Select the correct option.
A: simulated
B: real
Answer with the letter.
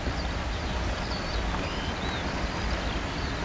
B